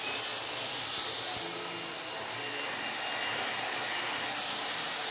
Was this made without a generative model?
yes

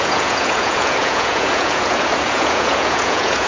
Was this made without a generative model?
no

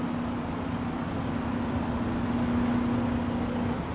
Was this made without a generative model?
yes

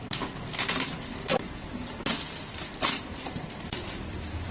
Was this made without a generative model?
yes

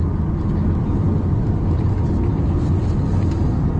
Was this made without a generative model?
yes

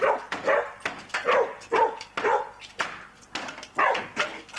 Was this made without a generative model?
yes